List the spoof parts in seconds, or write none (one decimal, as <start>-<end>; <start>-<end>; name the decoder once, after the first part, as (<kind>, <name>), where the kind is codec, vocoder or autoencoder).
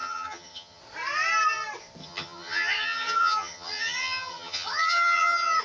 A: 0.0-0.8 (vocoder, HiFi-GAN); 2.0-5.6